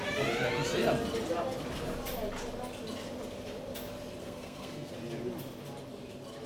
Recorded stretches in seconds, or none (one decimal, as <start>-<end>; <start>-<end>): 0.0-4.2; 4.9-6.5

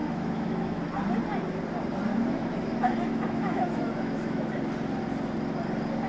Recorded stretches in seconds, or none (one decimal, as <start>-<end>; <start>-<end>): 0.8-2.1; 4.5-6.1

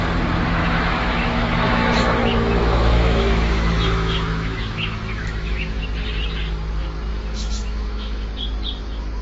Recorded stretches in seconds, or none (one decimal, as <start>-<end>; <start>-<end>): 0.0-0.6; 5.8-7.1; 8.3-9.2

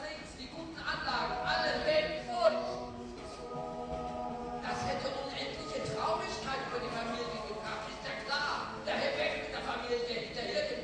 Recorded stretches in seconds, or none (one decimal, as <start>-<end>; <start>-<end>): 0.0-1.8; 2.9-10.8

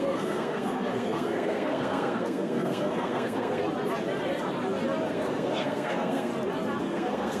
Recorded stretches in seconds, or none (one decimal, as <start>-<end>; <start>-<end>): 3.6-5.1; 6.3-6.8

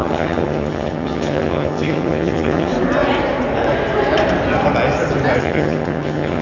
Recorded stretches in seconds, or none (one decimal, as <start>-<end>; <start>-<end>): 2.7-5.4

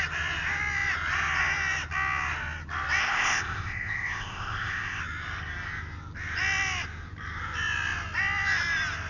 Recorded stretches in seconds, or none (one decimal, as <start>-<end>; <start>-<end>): 0.0-3.0; 5.0-9.1